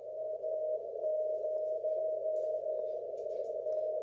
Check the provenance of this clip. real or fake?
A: real